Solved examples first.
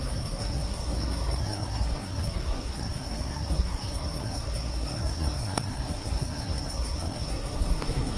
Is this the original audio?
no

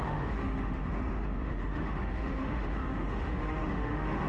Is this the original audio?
no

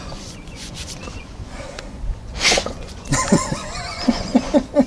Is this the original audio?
no